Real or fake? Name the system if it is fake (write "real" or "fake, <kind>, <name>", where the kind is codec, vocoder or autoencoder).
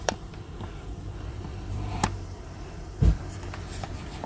fake, vocoder, BigVGAN v2